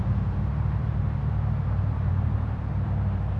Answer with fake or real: fake